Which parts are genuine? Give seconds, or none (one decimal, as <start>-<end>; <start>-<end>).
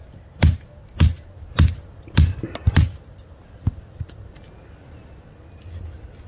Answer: 0.0-6.3